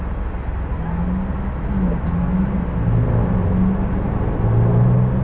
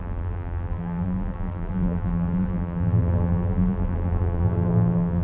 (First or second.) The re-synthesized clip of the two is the second